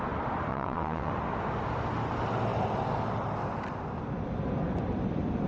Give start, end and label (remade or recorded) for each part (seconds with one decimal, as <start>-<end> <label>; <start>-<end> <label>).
0.0-0.5 recorded; 0.5-1.1 remade; 1.1-5.5 recorded